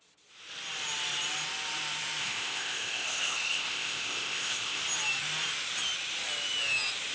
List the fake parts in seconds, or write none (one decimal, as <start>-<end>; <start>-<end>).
2.2-4.8